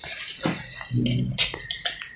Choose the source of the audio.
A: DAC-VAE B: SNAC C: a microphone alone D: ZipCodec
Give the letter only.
C